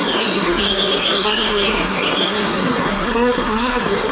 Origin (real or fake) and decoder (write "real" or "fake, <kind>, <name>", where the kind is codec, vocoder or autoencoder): fake, codec, SNAC